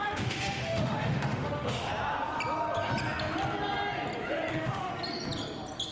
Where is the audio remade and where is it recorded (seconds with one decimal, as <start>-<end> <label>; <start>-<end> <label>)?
0.0-1.9 remade; 1.9-4.5 recorded; 4.5-4.9 remade; 4.9-5.9 recorded